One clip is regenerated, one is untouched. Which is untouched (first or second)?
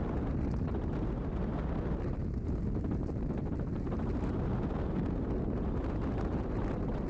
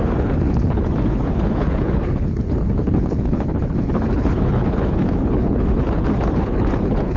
first